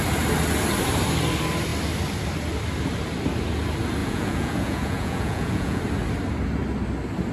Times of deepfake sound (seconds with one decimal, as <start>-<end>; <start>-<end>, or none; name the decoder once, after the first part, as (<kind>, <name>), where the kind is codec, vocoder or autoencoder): 4.0-5.8 (vocoder, Vocos)